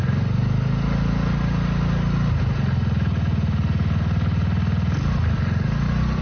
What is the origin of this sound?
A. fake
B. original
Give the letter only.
B